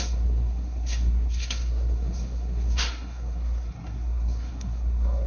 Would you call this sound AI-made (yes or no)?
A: yes